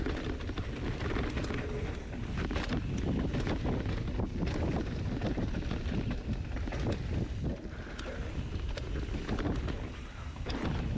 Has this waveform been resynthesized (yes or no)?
no